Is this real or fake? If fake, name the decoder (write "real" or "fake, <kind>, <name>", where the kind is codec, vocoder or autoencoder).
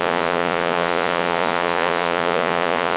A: fake, vocoder, Vocos